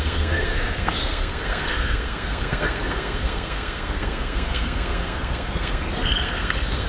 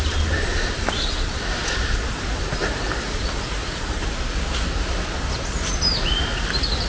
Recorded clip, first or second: second